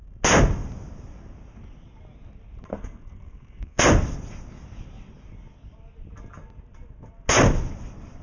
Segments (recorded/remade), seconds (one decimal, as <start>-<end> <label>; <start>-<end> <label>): 0.0-2.7 recorded; 2.7-3.8 remade; 3.8-8.2 recorded